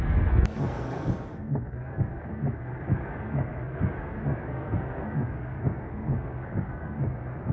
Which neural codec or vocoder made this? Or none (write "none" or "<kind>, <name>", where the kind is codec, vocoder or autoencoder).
codec, SNAC